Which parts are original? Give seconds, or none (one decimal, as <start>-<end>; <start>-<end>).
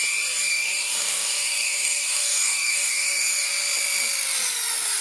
0.0-0.5; 3.5-5.0